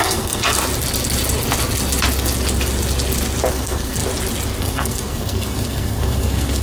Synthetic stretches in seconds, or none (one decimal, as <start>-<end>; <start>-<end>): 0.0-0.6; 3.5-4.0; 4.6-6.6